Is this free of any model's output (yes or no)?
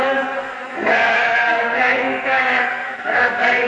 no